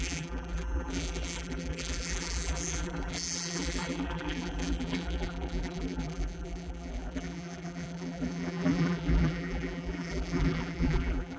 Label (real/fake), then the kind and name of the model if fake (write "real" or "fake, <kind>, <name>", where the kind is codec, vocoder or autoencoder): fake, vocoder, BigVGAN v2